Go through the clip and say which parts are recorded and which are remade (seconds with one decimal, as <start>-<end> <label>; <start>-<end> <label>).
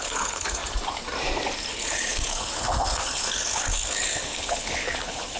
0.0-0.6 remade; 0.6-1.7 recorded; 1.7-5.4 remade